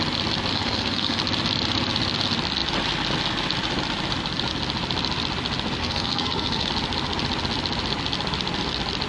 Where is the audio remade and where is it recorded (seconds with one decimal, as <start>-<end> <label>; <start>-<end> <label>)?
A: 0.0-0.5 recorded; 0.5-1.2 remade; 1.2-5.8 recorded; 5.8-6.7 remade; 6.7-9.1 recorded